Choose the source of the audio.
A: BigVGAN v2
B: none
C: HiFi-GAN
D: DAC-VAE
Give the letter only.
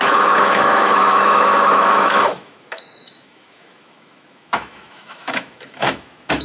D